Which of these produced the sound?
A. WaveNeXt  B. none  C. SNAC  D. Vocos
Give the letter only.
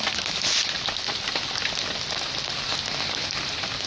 B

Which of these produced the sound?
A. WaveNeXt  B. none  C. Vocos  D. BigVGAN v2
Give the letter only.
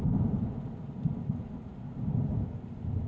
B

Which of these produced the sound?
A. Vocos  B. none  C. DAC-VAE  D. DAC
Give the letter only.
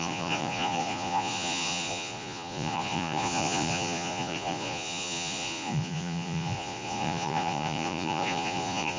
A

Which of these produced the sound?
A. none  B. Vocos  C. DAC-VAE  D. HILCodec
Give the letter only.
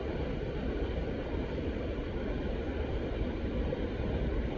A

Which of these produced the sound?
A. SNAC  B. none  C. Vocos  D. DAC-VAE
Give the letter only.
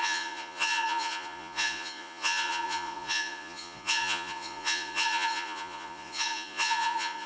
C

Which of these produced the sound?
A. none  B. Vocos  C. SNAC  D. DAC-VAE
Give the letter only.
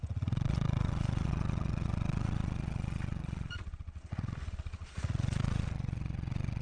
B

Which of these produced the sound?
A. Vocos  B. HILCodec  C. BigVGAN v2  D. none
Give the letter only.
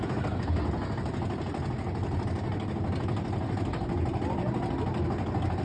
D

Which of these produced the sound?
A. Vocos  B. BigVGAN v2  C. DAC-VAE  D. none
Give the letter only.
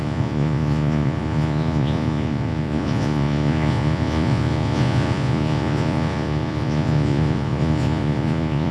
A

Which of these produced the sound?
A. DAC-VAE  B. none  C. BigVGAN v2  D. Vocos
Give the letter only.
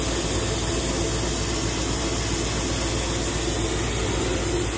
B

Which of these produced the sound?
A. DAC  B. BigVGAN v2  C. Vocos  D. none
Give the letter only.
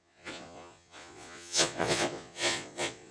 C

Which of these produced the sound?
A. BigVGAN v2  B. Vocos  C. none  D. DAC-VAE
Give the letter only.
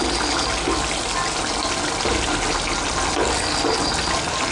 C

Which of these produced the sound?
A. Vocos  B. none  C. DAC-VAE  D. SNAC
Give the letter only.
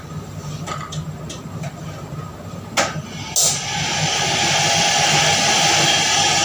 B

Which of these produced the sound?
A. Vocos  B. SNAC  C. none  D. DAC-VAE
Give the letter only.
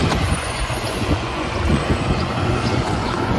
A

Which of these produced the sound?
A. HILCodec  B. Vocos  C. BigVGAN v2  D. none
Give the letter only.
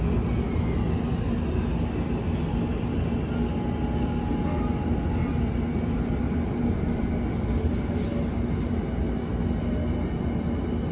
D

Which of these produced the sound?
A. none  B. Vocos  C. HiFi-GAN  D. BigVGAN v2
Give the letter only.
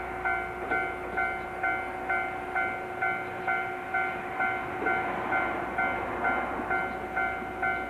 A